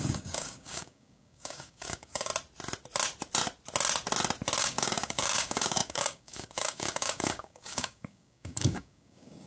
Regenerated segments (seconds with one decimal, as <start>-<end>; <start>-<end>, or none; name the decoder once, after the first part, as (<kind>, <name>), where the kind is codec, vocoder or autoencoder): 0.0-2.3 (codec, DAC); 4.6-9.5